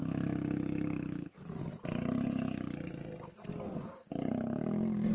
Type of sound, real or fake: real